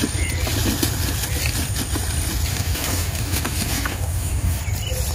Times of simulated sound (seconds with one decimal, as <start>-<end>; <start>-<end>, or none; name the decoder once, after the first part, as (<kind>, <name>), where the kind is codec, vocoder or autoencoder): 2.5-4.6 (codec, DAC)